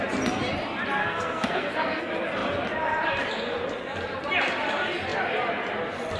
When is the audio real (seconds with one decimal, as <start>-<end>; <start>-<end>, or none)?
0.0-1.0; 2.0-6.2